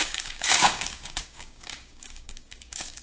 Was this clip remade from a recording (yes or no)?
yes